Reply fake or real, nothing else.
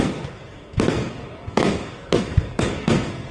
fake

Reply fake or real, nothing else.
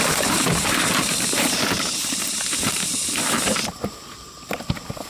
fake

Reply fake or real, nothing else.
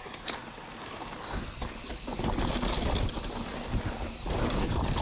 real